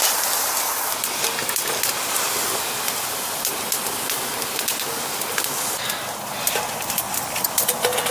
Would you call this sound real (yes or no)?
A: yes